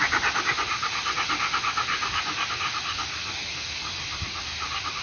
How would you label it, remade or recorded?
recorded